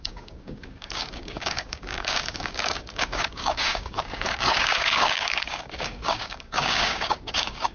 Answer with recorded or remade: remade